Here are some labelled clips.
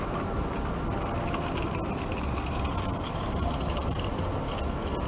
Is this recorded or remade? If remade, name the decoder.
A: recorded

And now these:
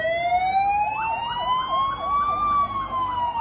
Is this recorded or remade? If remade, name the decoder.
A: recorded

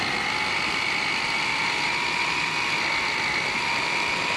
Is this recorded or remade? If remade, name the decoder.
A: recorded